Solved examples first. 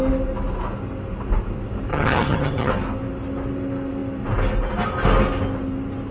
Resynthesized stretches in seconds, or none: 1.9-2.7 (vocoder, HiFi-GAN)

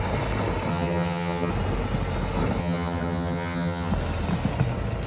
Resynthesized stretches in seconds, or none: 0.7-1.5 (vocoder, HiFi-GAN); 2.6-3.9

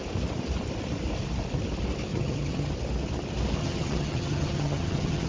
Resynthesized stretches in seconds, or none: 2.1-2.7 (vocoder, HiFi-GAN); 3.6-5.3

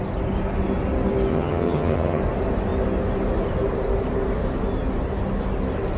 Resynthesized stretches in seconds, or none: 1.3-2.2 (vocoder, HiFi-GAN)

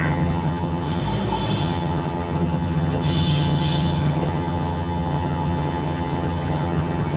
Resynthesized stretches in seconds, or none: 0.0-1.0 (vocoder, HiFi-GAN); 1.6-7.2

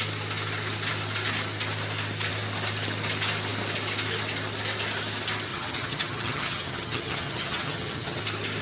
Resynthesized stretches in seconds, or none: 5.5-8.2 (vocoder, HiFi-GAN)